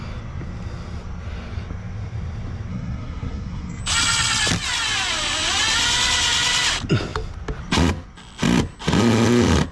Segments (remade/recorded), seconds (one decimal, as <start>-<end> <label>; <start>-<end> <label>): 0.0-2.7 recorded; 2.7-3.8 remade; 3.8-9.7 recorded